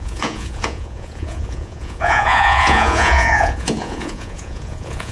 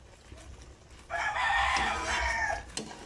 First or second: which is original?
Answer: second